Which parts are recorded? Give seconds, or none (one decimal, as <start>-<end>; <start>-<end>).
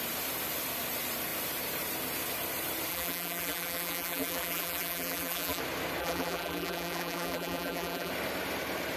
0.0-2.9; 5.6-6.0; 8.1-9.0